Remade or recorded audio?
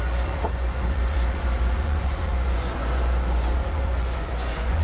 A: remade